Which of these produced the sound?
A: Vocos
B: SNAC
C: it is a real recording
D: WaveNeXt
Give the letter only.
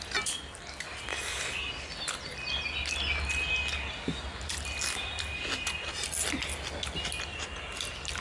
C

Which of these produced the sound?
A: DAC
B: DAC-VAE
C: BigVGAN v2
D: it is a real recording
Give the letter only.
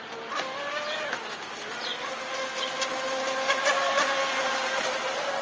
D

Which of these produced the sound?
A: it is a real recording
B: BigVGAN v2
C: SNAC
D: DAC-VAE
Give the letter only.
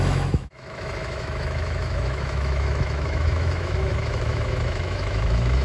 D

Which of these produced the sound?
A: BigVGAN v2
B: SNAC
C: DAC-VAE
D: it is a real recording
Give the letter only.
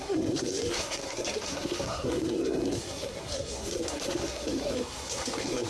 B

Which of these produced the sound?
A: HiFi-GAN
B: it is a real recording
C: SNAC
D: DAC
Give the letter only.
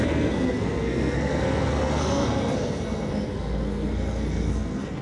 C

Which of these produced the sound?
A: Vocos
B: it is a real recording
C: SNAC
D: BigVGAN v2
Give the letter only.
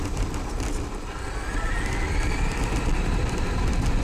B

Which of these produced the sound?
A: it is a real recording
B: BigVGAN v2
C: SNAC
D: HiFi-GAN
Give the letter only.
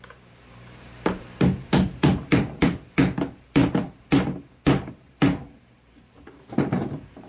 B